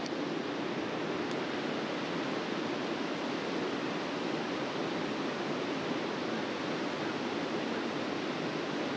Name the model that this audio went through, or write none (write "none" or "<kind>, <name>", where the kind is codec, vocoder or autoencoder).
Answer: none